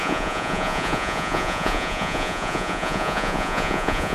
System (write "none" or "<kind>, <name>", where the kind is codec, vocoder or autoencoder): vocoder, Vocos